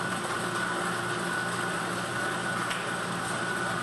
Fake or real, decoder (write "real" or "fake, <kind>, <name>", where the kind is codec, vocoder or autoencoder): real